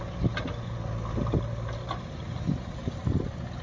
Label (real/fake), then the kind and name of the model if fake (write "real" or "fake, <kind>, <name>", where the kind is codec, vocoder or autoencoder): real